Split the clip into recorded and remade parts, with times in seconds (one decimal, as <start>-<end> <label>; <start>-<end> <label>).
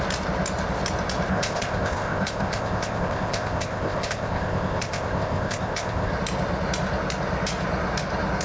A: 0.0-1.3 recorded; 1.3-6.1 remade; 6.1-8.4 recorded